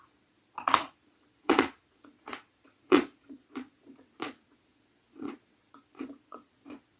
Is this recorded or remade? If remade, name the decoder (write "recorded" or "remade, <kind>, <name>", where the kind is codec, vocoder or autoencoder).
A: remade, vocoder, Vocos